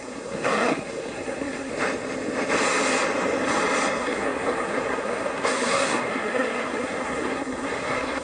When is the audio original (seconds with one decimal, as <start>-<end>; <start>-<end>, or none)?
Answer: 1.7-4.0